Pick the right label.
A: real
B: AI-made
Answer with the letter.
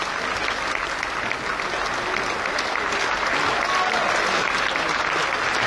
A